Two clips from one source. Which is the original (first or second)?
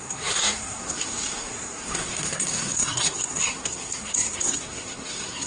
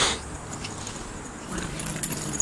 second